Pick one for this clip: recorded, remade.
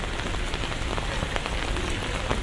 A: recorded